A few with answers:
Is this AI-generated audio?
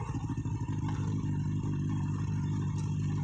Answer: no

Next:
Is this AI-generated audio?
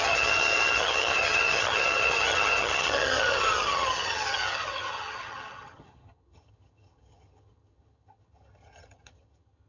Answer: yes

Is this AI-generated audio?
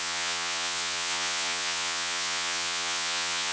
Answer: yes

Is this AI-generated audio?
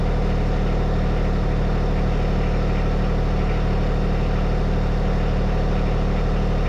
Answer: no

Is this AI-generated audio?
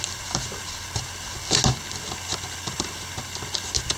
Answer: no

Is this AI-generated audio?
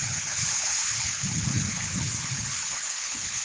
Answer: yes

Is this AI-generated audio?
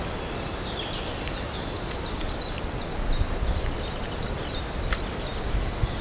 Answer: no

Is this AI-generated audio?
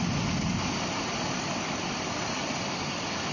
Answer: no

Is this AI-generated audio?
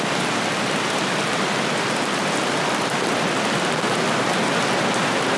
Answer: no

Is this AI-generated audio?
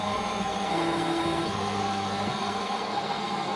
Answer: yes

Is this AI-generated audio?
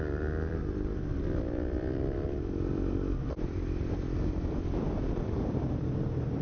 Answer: yes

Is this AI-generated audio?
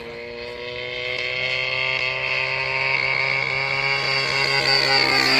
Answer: no